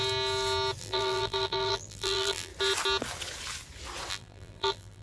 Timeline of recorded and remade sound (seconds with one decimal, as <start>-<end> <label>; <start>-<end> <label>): 0.0-0.8 recorded; 0.8-2.5 remade; 2.5-4.1 recorded; 4.1-5.0 remade